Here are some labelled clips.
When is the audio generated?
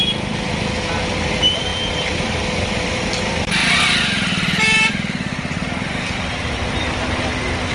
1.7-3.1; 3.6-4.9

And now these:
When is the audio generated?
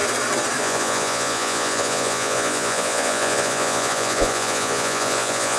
0.6-5.6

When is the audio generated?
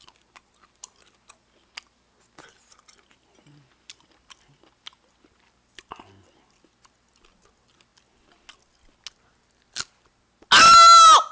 none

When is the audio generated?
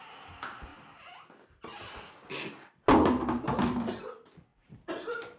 0.0-0.7; 3.9-5.4